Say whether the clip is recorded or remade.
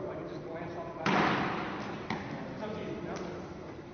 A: recorded